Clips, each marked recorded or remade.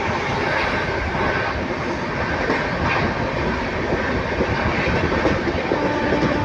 recorded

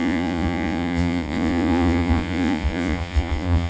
remade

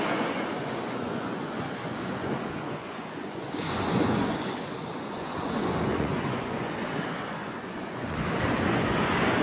remade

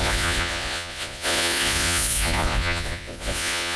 remade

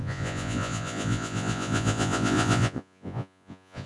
remade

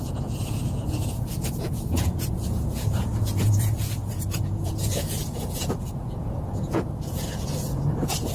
remade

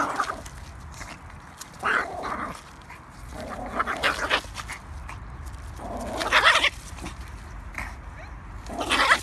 recorded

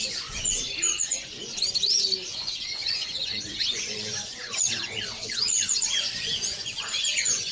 remade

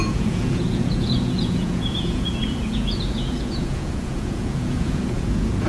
remade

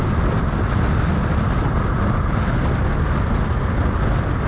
recorded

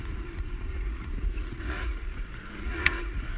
remade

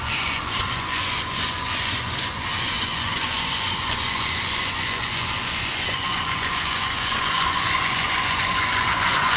remade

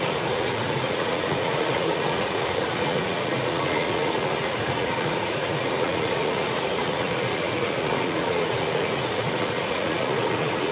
remade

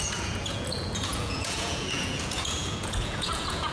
remade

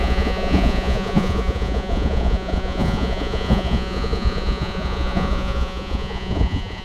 remade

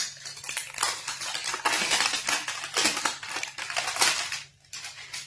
recorded